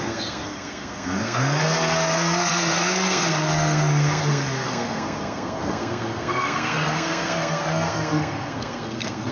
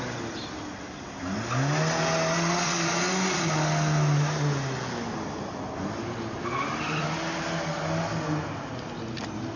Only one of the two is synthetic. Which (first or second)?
first